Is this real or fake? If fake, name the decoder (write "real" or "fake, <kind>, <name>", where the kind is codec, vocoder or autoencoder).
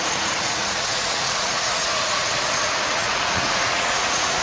fake, vocoder, Vocos